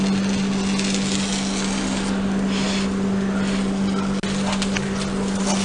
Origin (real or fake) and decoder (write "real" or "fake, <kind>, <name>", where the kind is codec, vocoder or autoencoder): real